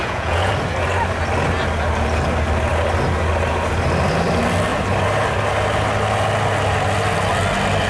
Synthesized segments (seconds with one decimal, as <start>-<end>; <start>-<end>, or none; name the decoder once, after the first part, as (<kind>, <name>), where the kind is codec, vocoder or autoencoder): 0.0-0.5 (vocoder, Vocos)